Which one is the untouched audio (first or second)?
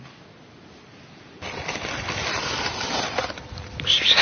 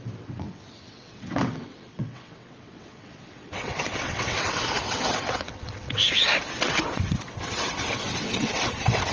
first